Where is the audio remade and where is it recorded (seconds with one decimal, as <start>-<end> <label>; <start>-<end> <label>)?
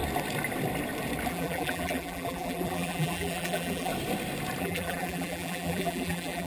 0.0-1.3 recorded; 1.3-3.9 remade; 3.9-4.6 recorded; 4.6-6.5 remade